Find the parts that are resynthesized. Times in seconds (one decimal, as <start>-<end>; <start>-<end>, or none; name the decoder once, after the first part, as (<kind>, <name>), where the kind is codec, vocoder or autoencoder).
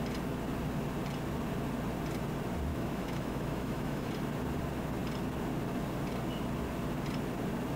2.7-4.1 (autoencoder, DAC-VAE)